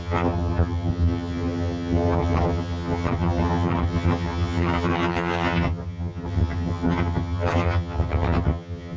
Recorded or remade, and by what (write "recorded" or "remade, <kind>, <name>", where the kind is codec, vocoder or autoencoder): remade, vocoder, HiFi-GAN